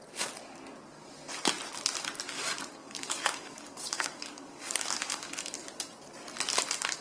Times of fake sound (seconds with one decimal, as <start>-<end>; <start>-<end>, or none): 2.8-5.3